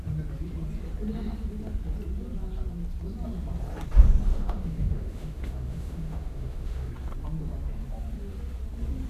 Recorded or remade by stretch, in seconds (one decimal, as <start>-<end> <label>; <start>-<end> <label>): 0.0-4.3 recorded; 4.3-6.9 remade; 6.9-9.1 recorded